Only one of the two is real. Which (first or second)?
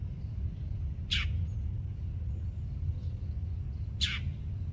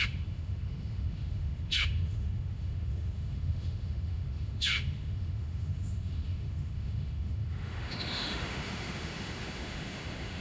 first